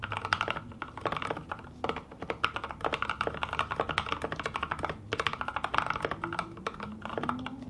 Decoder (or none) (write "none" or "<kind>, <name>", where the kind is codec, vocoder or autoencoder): none